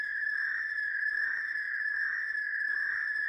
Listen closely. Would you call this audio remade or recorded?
remade